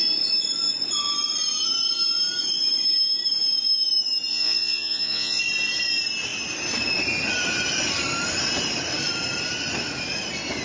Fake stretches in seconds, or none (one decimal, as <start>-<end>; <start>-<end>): 4.3-5.4